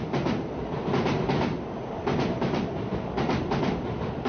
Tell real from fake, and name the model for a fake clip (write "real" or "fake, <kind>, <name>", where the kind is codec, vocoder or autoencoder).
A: real